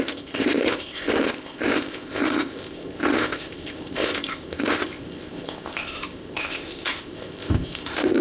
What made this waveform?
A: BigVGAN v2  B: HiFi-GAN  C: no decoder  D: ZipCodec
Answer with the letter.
D